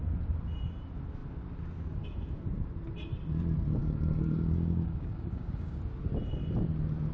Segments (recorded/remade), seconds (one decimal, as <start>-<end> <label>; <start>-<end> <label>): 0.0-3.8 recorded; 3.8-5.8 remade; 5.8-7.1 recorded